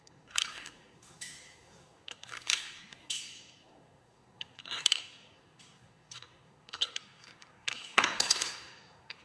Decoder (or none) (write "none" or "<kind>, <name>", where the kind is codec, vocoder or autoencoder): codec, SNAC